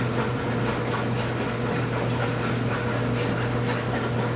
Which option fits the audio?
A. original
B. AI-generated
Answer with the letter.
A